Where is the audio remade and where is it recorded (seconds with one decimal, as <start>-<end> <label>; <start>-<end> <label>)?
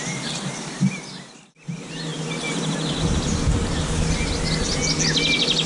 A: 0.0-5.7 recorded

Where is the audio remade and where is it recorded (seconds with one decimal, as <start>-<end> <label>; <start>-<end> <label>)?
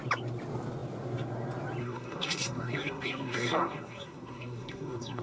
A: 0.0-1.8 recorded; 1.8-5.2 remade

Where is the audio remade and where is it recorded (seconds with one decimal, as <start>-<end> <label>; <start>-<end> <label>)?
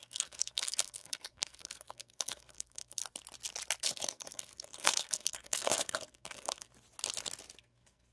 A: 0.0-3.0 remade; 3.0-3.8 recorded; 3.8-6.7 remade; 6.7-7.6 recorded; 7.6-8.1 remade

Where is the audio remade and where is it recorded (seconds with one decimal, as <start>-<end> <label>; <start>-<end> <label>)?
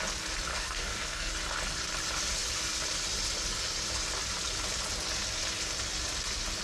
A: 0.0-0.5 recorded; 0.5-1.3 remade; 1.3-6.6 recorded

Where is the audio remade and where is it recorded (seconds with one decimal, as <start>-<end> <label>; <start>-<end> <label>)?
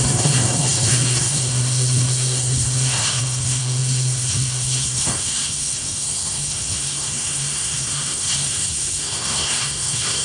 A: 0.0-10.2 remade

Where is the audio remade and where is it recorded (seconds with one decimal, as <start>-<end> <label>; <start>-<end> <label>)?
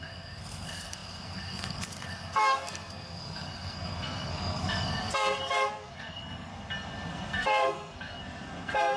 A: 0.0-6.5 remade; 6.5-7.1 recorded; 7.1-9.0 remade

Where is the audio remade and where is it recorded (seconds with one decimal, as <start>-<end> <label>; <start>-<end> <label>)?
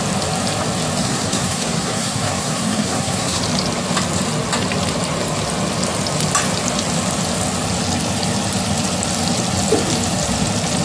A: 0.0-1.0 recorded; 1.0-3.4 remade; 3.4-10.8 recorded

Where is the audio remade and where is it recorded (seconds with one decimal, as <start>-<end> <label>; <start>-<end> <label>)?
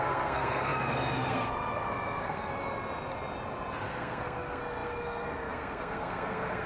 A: 0.0-2.5 remade; 2.5-3.8 recorded; 3.8-6.7 remade